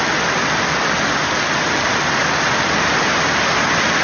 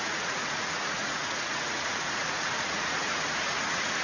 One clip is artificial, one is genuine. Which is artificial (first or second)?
second